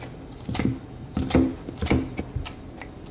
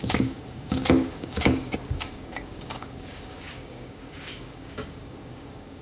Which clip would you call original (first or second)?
first